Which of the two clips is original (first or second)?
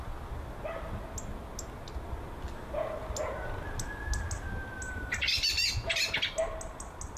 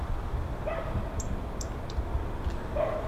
first